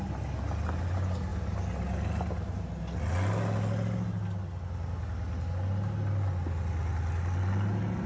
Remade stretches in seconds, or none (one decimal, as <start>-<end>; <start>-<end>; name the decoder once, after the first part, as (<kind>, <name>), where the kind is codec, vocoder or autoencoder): none